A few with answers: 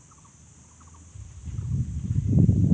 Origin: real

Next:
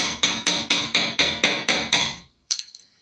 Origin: fake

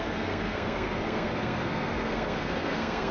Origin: fake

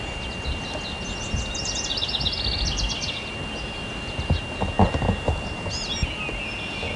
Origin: real